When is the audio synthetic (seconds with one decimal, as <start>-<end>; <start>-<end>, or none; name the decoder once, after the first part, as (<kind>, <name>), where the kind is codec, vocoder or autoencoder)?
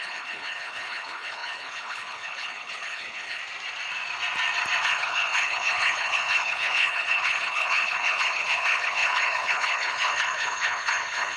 0.0-3.4 (codec, HILCodec); 4.8-11.4